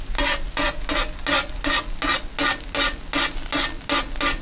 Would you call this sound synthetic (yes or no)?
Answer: no